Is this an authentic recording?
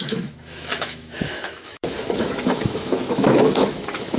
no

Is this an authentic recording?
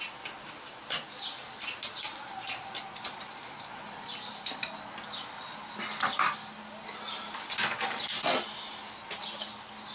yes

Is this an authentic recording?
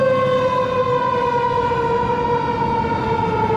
yes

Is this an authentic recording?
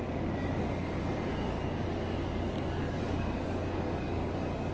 no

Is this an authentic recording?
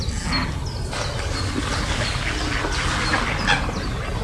yes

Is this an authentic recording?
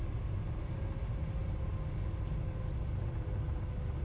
yes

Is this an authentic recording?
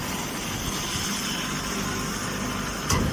yes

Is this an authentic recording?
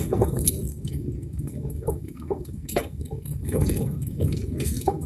no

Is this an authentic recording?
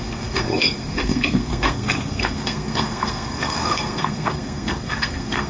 no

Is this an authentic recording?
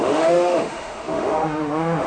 no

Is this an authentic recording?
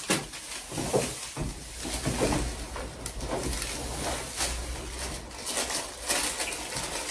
yes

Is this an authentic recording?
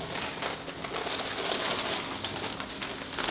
yes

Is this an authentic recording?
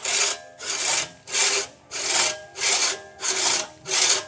yes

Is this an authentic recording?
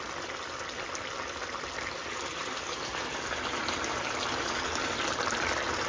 yes